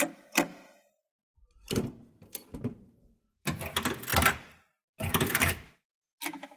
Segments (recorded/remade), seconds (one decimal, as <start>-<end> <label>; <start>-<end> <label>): 0.0-0.5 recorded; 0.5-3.6 remade; 3.6-4.1 recorded; 4.1-6.0 remade; 6.0-6.6 recorded